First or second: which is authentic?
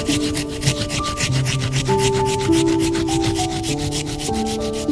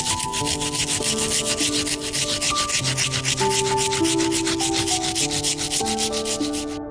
second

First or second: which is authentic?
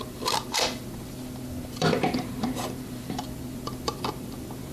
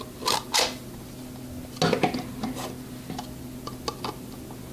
second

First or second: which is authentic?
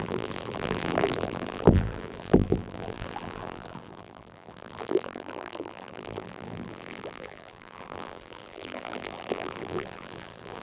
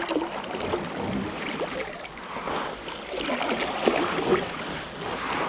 second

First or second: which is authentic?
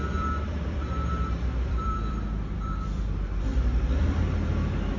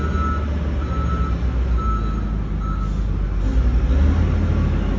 second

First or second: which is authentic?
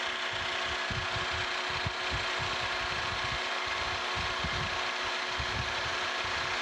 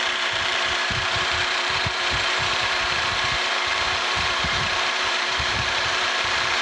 first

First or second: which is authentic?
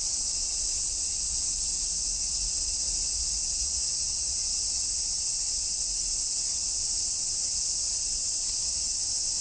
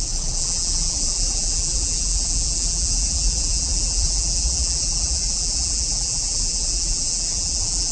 first